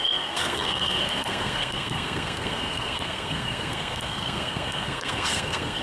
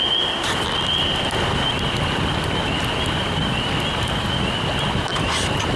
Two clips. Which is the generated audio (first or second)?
first